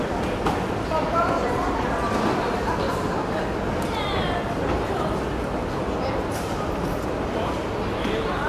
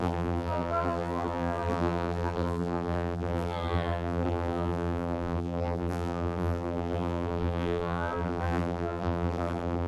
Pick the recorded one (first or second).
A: first